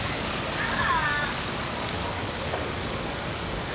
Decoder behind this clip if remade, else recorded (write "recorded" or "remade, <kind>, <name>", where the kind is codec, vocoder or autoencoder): remade, codec, DAC